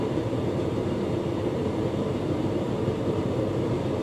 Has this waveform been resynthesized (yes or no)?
yes